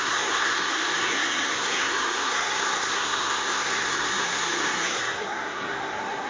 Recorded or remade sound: remade